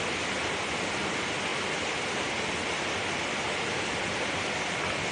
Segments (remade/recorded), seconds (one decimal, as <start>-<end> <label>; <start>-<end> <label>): 0.0-5.1 recorded

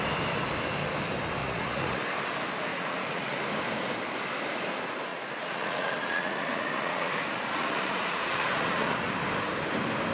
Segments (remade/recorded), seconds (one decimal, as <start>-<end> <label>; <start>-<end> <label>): 0.0-1.4 recorded; 1.4-2.0 remade; 2.0-2.7 recorded; 2.7-3.4 remade; 3.4-5.1 recorded; 5.1-9.1 remade; 9.1-10.1 recorded

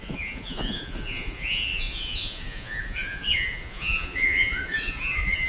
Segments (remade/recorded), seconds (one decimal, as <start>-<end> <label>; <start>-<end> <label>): 0.0-5.5 remade

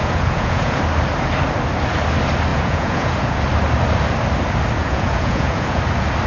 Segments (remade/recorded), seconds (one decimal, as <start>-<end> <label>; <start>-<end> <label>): 0.0-0.8 remade; 0.8-2.5 recorded; 2.5-3.4 remade; 3.4-4.8 recorded; 4.8-5.8 remade; 5.8-6.3 recorded